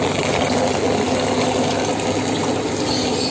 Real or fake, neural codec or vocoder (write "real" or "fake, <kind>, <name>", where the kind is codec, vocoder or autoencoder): real